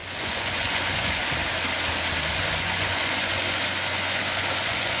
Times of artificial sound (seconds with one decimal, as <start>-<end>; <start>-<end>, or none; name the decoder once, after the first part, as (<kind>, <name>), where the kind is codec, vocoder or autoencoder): 0.0-1.2 (vocoder, Vocos); 2.3-5.0